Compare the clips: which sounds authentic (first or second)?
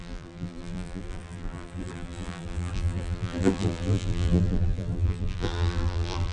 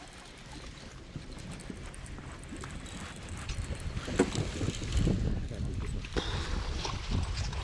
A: second